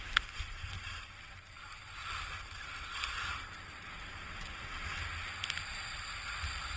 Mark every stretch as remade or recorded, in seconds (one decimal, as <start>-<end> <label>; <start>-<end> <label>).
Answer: 0.0-6.8 recorded